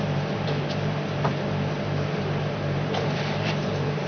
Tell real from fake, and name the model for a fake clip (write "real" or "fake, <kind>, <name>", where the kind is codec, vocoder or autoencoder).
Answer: fake, vocoder, BigVGAN v2